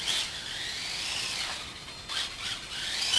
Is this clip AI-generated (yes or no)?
no